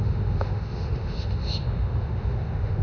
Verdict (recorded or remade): remade